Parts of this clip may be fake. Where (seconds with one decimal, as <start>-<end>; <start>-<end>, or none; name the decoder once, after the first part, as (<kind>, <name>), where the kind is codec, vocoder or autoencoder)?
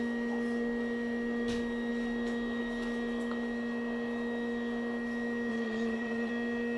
5.5-6.3 (vocoder, Vocos)